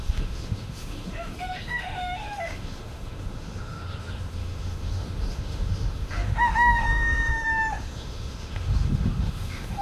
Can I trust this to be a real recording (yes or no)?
no